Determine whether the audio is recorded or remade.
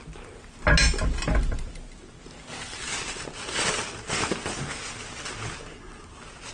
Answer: recorded